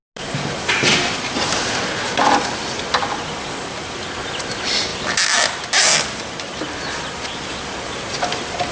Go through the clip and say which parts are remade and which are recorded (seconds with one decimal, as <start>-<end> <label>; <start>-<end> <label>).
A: 0.0-8.7 recorded